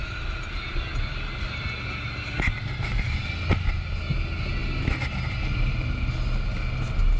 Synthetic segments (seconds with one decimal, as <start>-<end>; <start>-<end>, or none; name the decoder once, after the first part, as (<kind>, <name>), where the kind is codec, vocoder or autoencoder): none